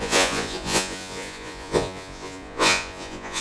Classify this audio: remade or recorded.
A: remade